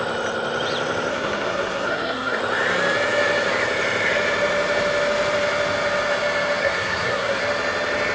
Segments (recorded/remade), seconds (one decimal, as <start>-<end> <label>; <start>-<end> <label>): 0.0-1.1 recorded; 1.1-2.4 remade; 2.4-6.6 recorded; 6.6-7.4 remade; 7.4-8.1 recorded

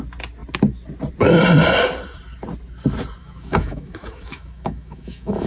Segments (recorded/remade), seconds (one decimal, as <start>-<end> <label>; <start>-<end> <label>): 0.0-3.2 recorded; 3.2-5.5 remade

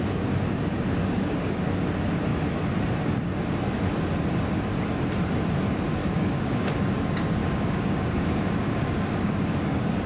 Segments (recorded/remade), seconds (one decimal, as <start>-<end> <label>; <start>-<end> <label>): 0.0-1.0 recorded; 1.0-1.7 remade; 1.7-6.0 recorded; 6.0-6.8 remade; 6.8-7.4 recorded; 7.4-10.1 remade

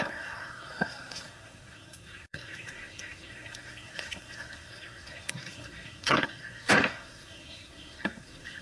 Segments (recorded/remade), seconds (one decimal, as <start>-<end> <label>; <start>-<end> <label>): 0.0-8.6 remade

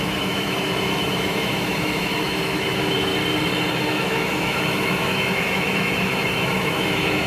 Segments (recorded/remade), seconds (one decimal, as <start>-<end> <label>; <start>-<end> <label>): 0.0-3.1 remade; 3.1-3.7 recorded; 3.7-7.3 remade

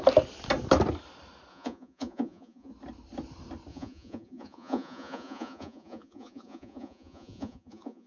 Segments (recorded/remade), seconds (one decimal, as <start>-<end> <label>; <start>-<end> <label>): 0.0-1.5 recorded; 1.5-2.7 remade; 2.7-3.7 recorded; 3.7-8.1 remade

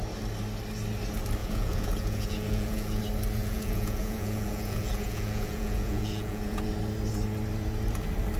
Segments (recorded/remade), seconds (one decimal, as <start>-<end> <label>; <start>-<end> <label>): 0.0-1.4 recorded; 1.4-3.0 remade; 3.0-3.4 recorded; 3.4-6.7 remade; 6.7-8.4 recorded